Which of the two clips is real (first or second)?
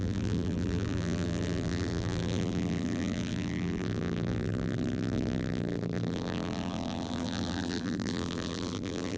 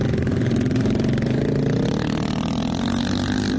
second